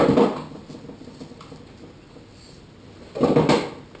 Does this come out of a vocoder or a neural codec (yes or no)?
no